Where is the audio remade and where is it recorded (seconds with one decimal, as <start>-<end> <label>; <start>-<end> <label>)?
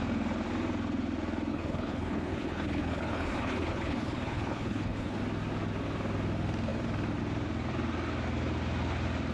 0.0-1.5 recorded; 1.5-5.2 remade; 5.2-9.3 recorded